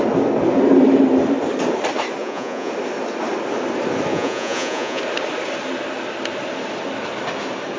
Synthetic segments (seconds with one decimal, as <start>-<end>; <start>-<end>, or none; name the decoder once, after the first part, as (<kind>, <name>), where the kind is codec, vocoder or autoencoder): 2.2-2.7 (vocoder, Vocos); 4.1-5.0